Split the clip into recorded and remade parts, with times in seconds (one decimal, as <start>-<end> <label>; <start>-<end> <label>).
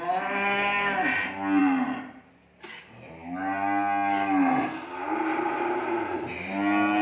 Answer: 0.0-7.0 recorded